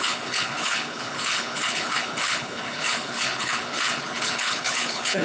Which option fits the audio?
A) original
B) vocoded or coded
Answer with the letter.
B